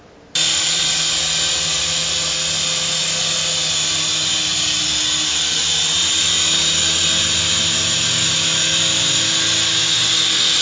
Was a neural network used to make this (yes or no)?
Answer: no